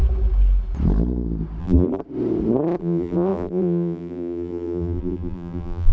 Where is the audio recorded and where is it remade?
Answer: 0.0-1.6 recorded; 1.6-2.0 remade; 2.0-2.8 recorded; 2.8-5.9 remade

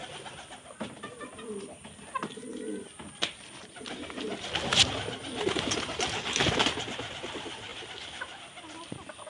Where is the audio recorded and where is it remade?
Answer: 0.0-9.3 recorded

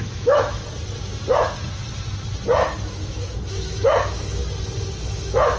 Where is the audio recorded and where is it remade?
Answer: 0.0-0.6 remade; 0.6-2.9 recorded; 2.9-4.4 remade; 4.4-5.0 recorded; 5.0-5.6 remade

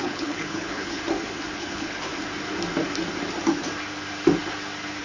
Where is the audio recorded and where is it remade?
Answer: 0.0-1.0 remade; 1.0-1.6 recorded; 1.6-2.1 remade; 2.1-5.0 recorded

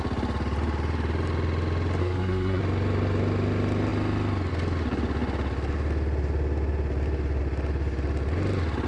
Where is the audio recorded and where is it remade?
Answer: 0.0-2.0 recorded; 2.0-2.6 remade; 2.6-8.9 recorded

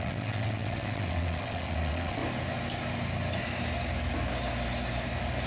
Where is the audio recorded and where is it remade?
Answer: 0.0-2.2 remade; 2.2-5.5 recorded